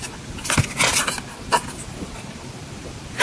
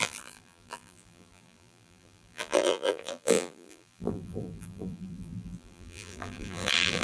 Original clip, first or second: first